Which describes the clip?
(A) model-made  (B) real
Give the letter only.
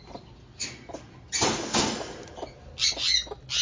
B